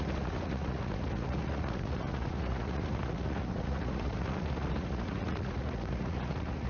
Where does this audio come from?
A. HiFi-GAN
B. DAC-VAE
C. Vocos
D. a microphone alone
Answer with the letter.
C